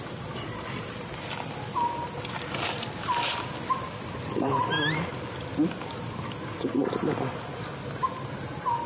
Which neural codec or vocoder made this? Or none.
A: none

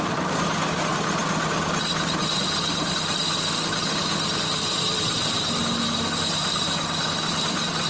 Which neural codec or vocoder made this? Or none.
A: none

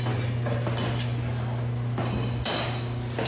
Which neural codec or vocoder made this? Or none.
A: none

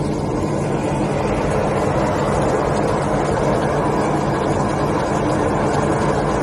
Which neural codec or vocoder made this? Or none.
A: none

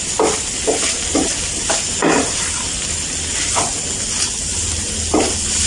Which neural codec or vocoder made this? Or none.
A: none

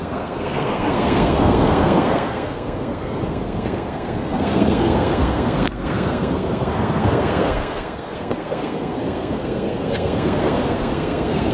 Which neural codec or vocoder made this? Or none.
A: codec, SNAC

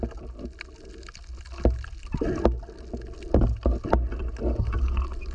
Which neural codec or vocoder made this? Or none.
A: none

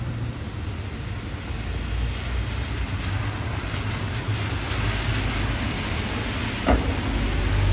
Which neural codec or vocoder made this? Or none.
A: none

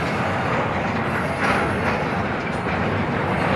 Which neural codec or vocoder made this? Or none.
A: none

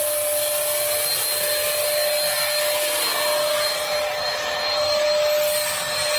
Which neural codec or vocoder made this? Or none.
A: none